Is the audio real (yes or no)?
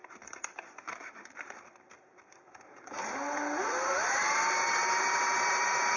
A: no